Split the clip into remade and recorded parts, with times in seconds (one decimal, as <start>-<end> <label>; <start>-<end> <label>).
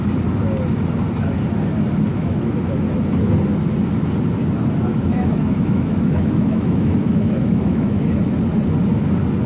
0.0-2.1 recorded; 2.1-2.8 remade; 2.8-4.9 recorded; 4.9-8.0 remade; 8.0-9.5 recorded